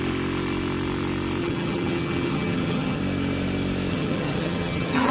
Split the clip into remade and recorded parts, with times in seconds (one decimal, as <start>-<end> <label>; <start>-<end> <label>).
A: 0.0-1.4 recorded; 1.4-3.0 remade; 3.0-3.9 recorded; 3.9-5.1 remade

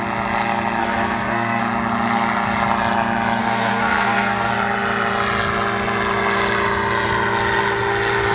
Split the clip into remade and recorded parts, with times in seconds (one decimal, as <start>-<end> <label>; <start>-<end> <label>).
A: 0.0-0.8 recorded; 0.8-1.6 remade; 1.6-3.4 recorded; 3.4-4.5 remade; 4.5-8.3 recorded

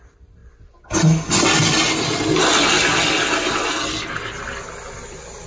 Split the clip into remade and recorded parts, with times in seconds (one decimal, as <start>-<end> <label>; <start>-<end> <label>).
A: 0.0-5.5 recorded

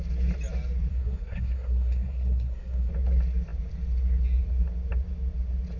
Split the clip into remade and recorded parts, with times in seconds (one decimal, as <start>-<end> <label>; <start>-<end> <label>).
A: 0.0-0.9 recorded; 0.9-2.9 remade; 2.9-5.8 recorded